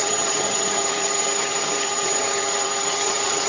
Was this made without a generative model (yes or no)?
no